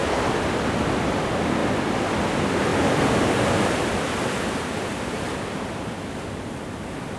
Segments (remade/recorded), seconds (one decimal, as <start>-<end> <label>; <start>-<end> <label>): 0.0-7.2 recorded